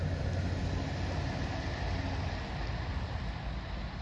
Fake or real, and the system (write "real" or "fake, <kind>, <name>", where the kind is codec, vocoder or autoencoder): real